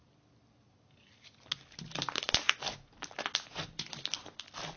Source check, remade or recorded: recorded